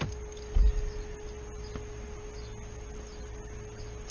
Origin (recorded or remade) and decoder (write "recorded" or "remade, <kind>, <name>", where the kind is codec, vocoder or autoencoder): recorded